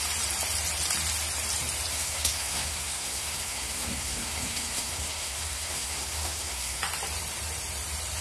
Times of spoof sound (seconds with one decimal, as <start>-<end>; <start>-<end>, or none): 1.9-6.8